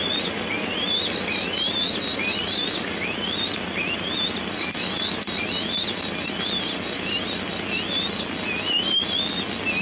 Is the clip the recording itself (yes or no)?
yes